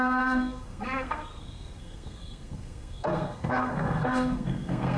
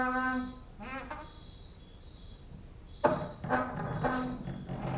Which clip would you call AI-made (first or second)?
first